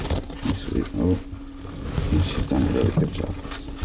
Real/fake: real